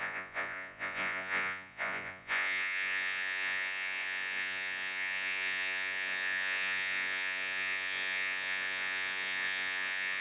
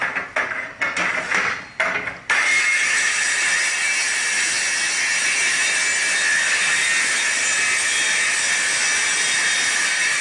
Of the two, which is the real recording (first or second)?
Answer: second